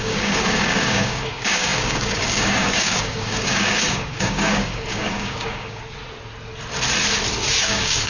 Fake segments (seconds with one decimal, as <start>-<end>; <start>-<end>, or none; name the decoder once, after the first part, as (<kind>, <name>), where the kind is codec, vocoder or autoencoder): 0.0-5.8 (codec, DAC); 7.6-8.1